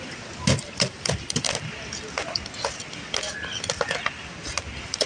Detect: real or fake real